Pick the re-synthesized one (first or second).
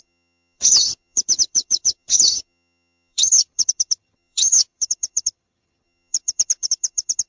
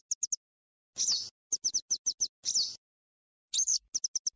first